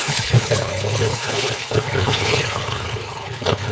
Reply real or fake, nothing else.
fake